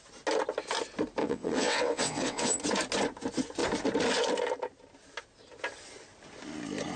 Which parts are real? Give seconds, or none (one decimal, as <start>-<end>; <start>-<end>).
0.0-1.2; 2.6-7.0